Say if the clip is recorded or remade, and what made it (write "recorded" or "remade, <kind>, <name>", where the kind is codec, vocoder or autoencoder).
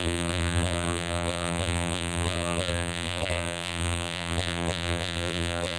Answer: remade, vocoder, BigVGAN v2